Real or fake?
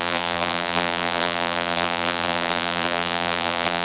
fake